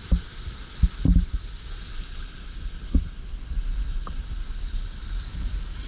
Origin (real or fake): real